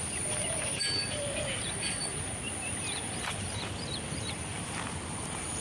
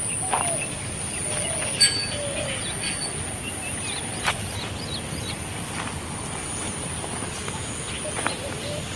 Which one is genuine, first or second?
second